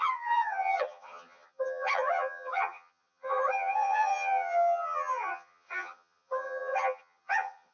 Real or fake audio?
fake